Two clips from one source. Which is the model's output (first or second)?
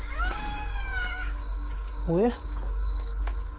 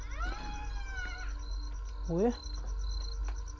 first